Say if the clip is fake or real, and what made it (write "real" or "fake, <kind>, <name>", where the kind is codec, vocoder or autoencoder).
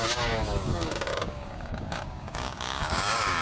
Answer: fake, codec, DAC